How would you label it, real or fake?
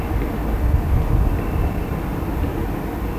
real